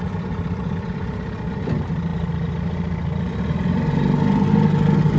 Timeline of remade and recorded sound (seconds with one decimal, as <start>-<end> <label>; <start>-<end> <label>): 0.0-5.2 recorded